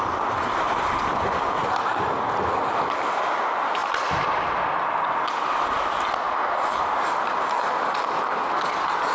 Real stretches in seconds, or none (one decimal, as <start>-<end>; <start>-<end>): 0.0-9.1